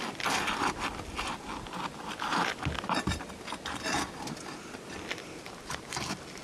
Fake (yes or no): no